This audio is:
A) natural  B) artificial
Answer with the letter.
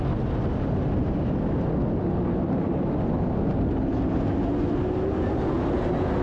A